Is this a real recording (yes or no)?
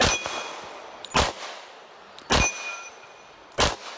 yes